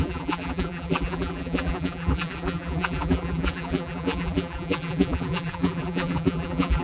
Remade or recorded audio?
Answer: remade